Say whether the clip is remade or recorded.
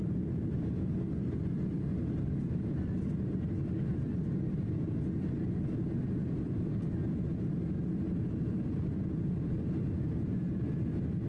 recorded